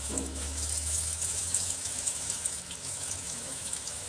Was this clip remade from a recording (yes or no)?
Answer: yes